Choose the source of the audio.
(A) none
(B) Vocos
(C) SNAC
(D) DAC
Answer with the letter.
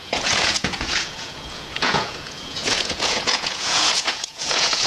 B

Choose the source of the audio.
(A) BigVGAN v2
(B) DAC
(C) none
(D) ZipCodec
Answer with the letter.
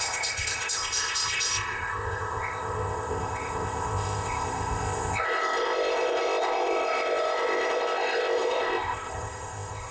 D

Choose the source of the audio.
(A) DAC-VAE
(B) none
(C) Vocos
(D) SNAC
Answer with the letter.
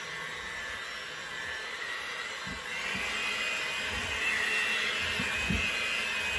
B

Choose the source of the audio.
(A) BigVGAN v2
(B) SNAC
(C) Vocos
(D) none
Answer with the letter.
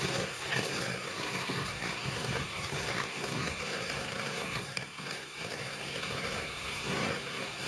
B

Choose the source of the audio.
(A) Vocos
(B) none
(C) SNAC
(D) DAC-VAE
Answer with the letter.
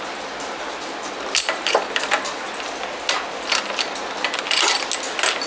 B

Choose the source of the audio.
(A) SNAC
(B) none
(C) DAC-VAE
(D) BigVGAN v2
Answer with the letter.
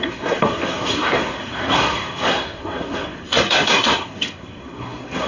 A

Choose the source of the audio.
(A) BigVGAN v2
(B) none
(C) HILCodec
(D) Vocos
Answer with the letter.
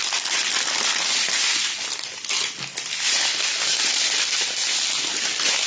B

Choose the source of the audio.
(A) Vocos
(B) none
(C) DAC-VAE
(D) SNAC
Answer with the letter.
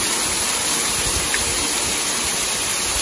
B